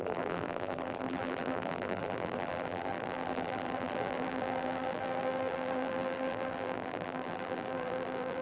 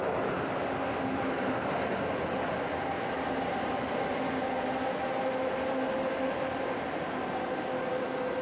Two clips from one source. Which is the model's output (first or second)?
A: first